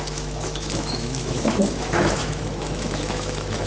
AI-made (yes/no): yes